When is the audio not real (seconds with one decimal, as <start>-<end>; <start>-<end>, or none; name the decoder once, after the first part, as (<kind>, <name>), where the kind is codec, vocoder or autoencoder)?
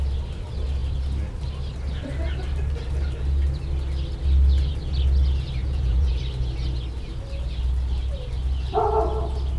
5.6-6.2 (vocoder, Vocos)